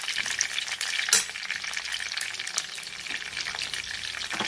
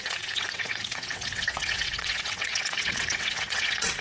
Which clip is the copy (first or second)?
second